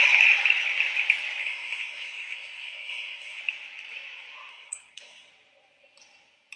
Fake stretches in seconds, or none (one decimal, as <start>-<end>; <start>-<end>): 1.4-3.4; 4.5-5.3